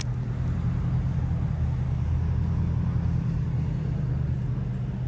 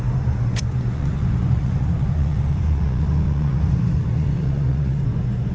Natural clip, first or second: first